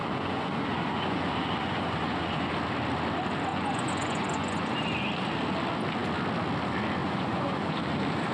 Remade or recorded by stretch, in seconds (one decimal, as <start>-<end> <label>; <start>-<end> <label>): 0.0-2.5 remade; 2.5-3.5 recorded; 3.5-4.7 remade; 4.7-7.0 recorded; 7.0-7.8 remade; 7.8-8.3 recorded